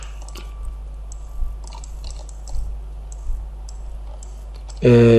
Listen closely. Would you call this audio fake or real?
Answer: real